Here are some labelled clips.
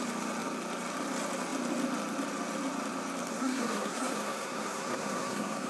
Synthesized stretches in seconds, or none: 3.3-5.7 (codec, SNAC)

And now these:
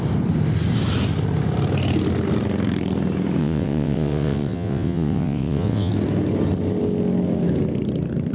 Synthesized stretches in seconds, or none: 3.4-5.9 (vocoder, WaveNeXt)

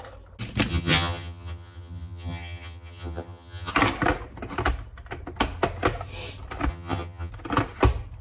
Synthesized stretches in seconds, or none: 0.7-3.7 (vocoder, HiFi-GAN); 6.7-7.3

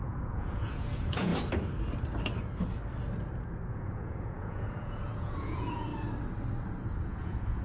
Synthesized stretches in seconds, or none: 0.0-1.3 (vocoder, Vocos); 3.7-5.9; 7.0-7.6